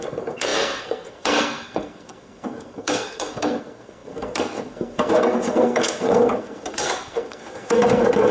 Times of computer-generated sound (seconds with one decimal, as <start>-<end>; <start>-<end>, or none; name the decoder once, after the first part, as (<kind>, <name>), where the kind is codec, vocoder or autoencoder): 0.0-8.3 (codec, SNAC)